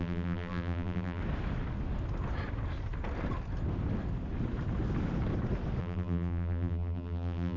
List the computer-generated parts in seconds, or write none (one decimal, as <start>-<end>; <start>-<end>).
0.0-1.2; 5.8-7.6